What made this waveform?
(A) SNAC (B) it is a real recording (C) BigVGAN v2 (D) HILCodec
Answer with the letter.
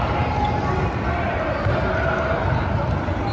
B